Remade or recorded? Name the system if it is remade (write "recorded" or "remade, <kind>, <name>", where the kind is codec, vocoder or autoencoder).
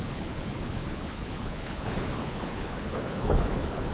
remade, codec, HILCodec